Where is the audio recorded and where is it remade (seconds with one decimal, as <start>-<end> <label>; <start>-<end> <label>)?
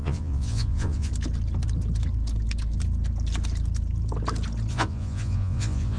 0.0-1.1 remade; 1.1-4.7 recorded; 4.7-6.0 remade